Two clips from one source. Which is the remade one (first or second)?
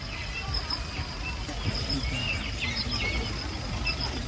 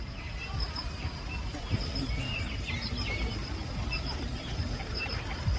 second